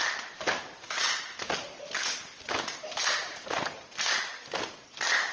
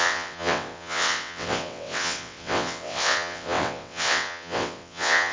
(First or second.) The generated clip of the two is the second